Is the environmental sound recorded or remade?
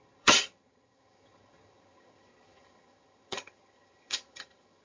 remade